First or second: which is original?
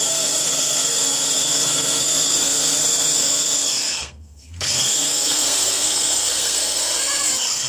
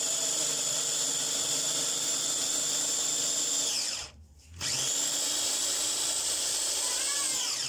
second